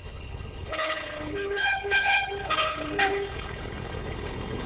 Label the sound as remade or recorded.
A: remade